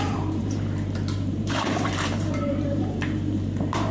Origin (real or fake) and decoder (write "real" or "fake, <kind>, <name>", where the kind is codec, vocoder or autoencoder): fake, vocoder, BigVGAN v2